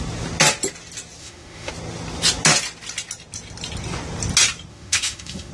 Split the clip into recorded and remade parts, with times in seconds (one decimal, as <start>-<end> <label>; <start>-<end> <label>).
0.0-1.2 recorded; 1.2-1.7 remade; 1.7-4.7 recorded; 4.7-5.5 remade